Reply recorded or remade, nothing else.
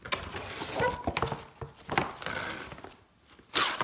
recorded